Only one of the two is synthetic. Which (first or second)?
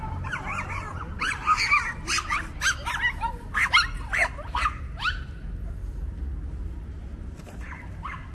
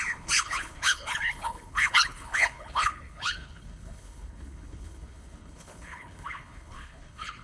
second